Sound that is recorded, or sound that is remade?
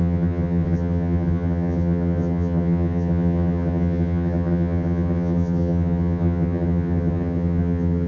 remade